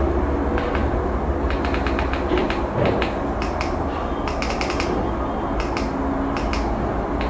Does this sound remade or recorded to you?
recorded